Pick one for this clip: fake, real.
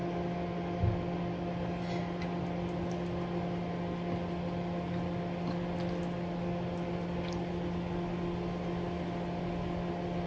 real